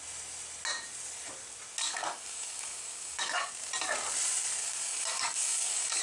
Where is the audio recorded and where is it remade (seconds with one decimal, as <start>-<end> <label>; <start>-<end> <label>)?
0.0-1.8 recorded; 1.8-3.5 remade; 3.5-4.6 recorded; 4.6-6.0 remade